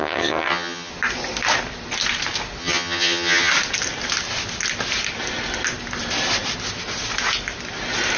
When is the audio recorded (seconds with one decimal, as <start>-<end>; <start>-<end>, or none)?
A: 0.9-2.6; 3.5-8.2